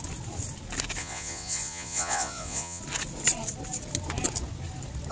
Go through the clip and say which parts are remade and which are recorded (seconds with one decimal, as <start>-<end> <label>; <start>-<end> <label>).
0.0-1.0 recorded; 1.0-2.8 remade; 2.8-5.1 recorded